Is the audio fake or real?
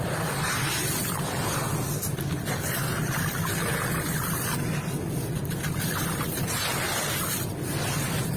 real